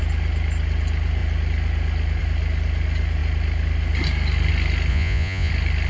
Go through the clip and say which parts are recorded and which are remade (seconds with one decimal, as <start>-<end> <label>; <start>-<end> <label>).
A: 0.0-4.9 recorded; 4.9-5.5 remade; 5.5-5.9 recorded